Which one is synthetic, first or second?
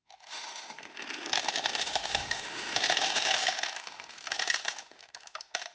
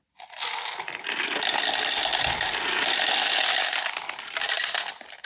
first